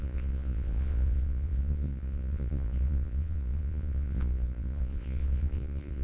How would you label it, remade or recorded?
remade